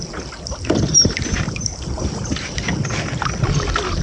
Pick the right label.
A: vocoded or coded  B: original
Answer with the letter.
A